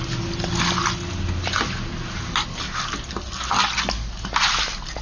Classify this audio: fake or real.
real